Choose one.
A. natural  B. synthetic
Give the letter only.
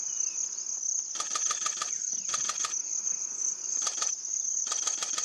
A